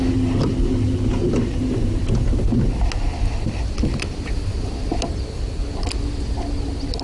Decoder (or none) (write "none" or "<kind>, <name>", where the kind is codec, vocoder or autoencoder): none